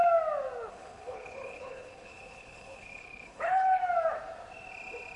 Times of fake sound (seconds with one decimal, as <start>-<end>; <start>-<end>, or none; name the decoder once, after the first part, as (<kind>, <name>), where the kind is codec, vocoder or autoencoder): 0.7-3.8 (codec, HILCodec)